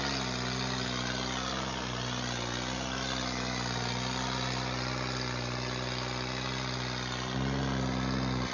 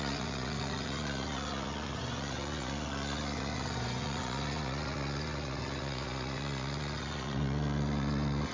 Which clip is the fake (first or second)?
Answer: second